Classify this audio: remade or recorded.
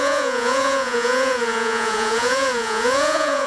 remade